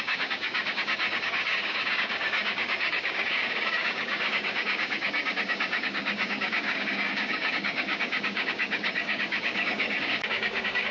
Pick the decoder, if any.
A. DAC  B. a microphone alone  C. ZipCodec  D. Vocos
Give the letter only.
A